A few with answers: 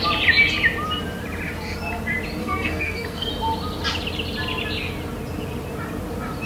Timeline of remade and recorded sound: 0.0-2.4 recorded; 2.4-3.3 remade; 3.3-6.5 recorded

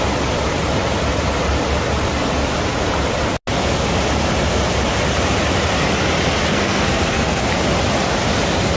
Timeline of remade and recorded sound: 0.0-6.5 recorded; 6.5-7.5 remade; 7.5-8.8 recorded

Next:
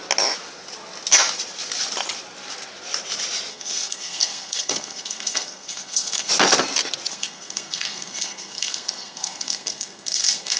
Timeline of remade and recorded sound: 0.0-3.5 recorded; 3.5-6.3 remade; 6.3-7.1 recorded; 7.1-10.6 remade

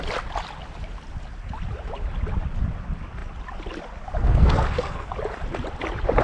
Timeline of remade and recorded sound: 0.0-4.2 recorded; 4.2-5.1 remade; 5.1-6.2 recorded

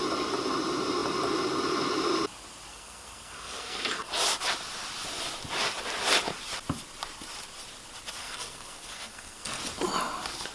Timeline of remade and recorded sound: 0.0-2.7 recorded; 2.7-4.1 remade; 4.1-8.2 recorded; 8.2-9.6 remade; 9.6-10.5 recorded

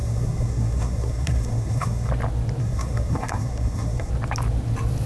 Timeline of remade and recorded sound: 0.0-2.1 remade; 2.1-2.6 recorded; 2.6-4.1 remade; 4.1-5.1 recorded